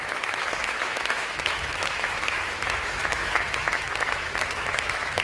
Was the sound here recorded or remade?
remade